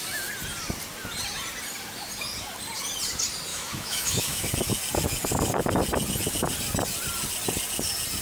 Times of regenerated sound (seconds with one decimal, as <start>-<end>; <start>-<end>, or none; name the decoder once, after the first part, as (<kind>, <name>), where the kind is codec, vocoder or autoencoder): 3.5-4.5 (autoencoder, DAC-VAE)